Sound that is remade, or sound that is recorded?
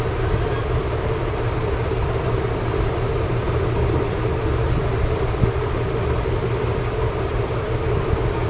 recorded